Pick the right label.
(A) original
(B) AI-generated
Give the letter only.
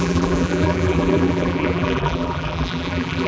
B